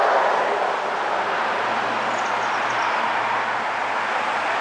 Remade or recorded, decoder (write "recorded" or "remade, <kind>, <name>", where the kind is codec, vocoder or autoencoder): recorded